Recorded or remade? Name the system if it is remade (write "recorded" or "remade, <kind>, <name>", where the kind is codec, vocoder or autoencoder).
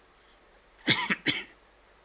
recorded